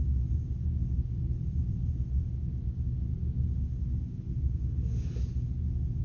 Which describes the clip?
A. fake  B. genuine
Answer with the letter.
B